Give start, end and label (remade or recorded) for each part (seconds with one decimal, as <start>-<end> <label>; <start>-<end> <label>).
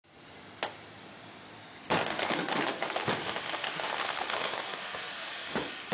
0.0-2.1 recorded; 2.1-3.1 remade; 3.1-3.5 recorded; 3.5-5.9 remade